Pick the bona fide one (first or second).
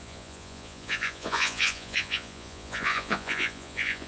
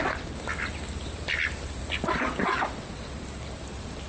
second